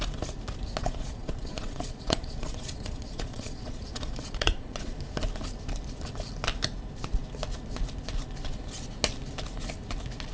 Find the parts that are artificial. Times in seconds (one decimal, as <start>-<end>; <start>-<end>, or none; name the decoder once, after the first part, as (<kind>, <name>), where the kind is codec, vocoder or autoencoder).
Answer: 0.8-5.0 (vocoder, Vocos)